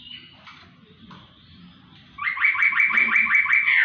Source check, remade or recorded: recorded